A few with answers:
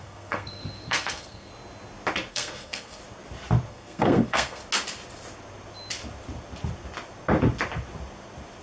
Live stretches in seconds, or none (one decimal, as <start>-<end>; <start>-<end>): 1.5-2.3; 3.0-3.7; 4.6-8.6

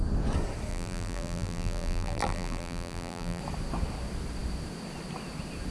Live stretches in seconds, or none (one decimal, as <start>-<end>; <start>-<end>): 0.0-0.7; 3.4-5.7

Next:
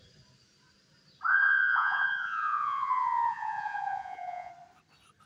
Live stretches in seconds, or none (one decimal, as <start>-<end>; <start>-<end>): 0.0-1.3; 4.5-5.3

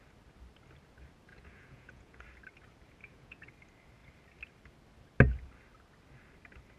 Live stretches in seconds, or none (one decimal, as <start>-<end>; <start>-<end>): 0.0-1.3; 2.2-3.0; 3.5-6.8

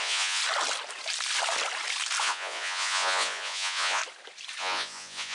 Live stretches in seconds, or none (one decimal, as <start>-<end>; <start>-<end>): 0.4-2.2; 4.0-4.6